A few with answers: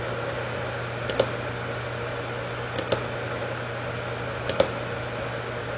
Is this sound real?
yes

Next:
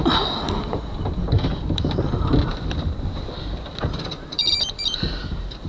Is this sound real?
no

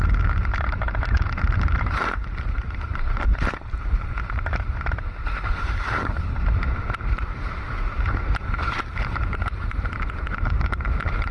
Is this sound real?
no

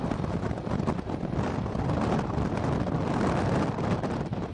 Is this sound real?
yes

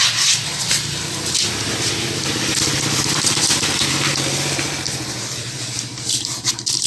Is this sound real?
no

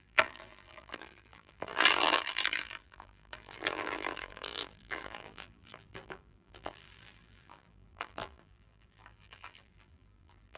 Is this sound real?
no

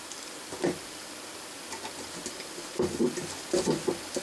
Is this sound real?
yes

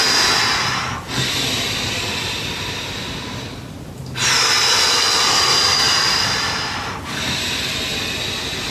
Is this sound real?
yes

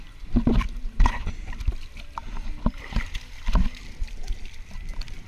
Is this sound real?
no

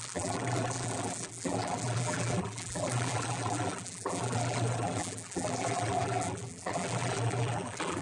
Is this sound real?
no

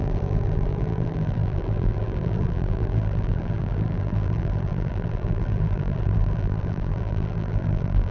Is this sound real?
no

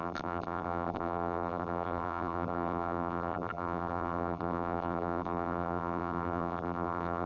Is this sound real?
no